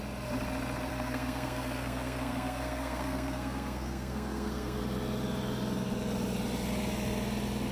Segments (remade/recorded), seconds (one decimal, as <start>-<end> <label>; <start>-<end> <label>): 0.0-0.9 recorded; 0.9-4.8 remade; 4.8-7.7 recorded